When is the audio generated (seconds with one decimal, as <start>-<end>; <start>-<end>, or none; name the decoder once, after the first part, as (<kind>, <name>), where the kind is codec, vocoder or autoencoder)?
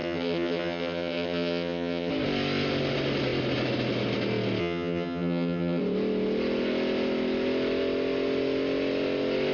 0.0-2.1 (vocoder, HiFi-GAN); 4.6-5.8